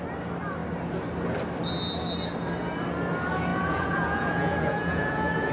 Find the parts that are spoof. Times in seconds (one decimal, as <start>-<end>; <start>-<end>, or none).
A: 3.5-5.5